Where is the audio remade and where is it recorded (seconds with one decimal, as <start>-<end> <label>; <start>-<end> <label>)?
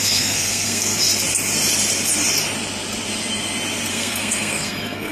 0.0-0.9 remade; 0.9-3.9 recorded; 3.9-5.1 remade